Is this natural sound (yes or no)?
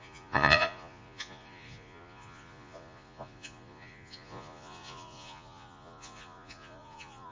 no